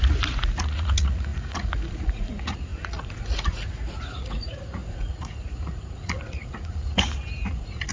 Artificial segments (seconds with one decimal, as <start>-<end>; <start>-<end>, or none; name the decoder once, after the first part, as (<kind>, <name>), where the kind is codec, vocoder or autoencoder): 0.0-7.9 (vocoder, Vocos)